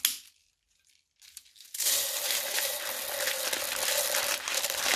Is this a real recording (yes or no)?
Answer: yes